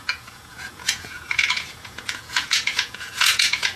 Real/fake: fake